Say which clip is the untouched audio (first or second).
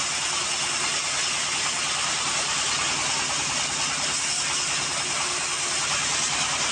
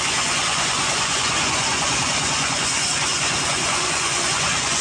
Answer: first